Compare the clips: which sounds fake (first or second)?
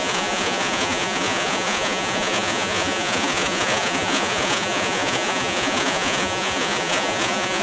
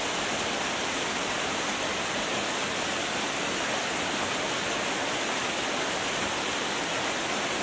first